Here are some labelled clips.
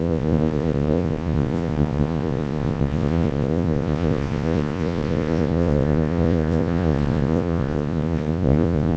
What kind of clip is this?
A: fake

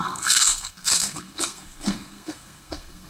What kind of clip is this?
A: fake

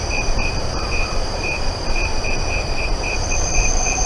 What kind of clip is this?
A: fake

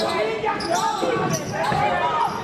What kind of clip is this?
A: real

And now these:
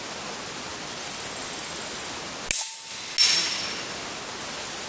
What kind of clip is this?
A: real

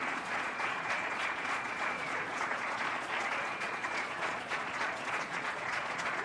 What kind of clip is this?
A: fake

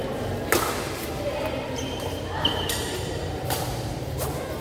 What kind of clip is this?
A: fake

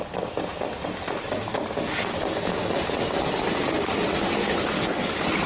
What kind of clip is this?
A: real